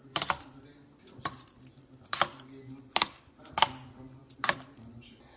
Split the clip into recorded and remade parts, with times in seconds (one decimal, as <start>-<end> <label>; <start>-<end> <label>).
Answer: 0.0-3.2 remade; 3.2-4.2 recorded; 4.2-5.0 remade; 5.0-5.4 recorded